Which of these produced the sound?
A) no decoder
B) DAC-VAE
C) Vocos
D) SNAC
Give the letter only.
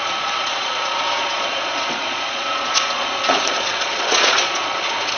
C